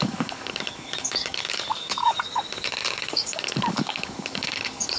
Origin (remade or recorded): remade